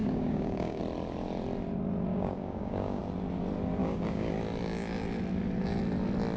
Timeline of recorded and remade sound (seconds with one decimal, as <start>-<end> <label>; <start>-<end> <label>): 0.0-0.8 remade; 0.8-2.1 recorded; 2.1-3.0 remade; 3.0-3.8 recorded; 3.8-4.3 remade; 4.3-6.4 recorded